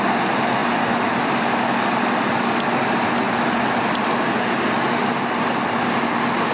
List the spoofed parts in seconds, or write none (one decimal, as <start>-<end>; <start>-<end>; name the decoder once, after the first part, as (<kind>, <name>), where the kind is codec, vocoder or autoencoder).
none